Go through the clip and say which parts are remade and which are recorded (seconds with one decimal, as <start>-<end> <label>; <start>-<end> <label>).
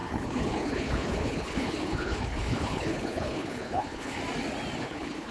0.0-4.2 remade; 4.2-4.8 recorded; 4.8-5.3 remade